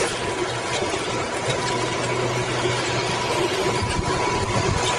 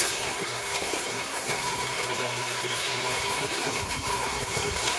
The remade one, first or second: second